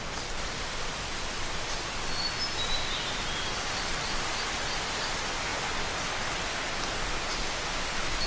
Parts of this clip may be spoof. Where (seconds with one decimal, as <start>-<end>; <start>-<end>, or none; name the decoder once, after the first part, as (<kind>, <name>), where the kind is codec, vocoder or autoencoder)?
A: none